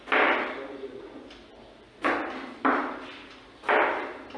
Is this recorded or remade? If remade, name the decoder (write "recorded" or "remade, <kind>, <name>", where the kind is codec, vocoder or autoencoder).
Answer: remade, vocoder, BigVGAN v2